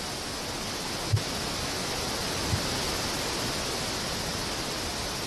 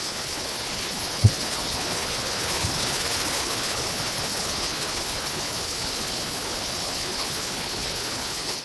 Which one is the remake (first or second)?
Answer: second